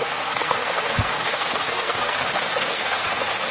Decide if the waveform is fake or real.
fake